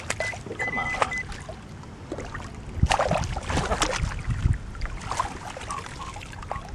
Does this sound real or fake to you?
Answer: real